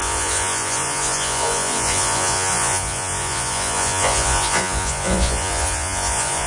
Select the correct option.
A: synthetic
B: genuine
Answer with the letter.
A